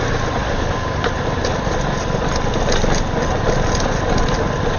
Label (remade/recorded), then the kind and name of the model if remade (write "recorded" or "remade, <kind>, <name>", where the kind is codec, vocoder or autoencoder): recorded